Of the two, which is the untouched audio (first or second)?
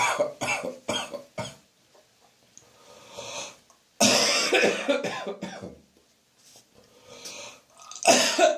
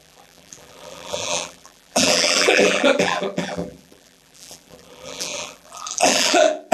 first